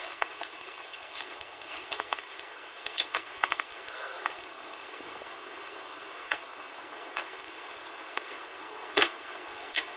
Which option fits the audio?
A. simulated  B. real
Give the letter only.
A